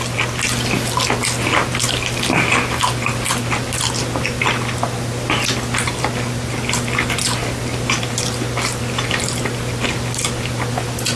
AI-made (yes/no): no